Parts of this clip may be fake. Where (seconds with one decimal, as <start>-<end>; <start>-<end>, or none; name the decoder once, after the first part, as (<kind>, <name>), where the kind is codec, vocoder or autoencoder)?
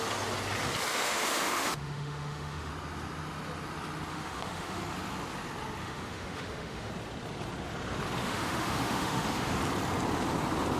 0.9-2.7 (autoencoder, DAC-VAE); 4.1-4.8; 5.8-6.9; 8.2-9.6